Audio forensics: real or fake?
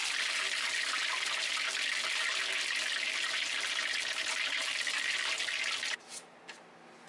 real